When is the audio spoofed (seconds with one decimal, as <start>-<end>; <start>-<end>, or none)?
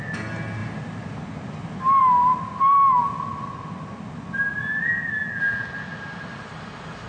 0.6-2.0